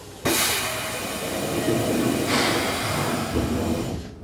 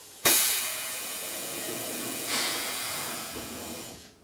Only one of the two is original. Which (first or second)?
first